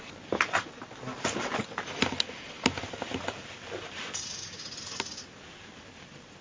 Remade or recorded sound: recorded